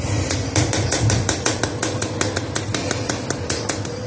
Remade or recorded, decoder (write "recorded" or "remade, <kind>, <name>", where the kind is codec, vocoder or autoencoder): recorded